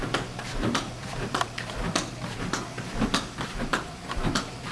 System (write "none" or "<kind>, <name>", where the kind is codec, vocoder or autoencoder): vocoder, BigVGAN v2